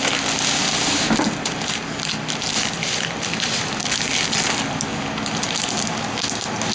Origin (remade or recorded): recorded